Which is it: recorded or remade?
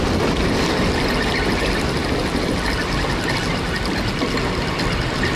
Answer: recorded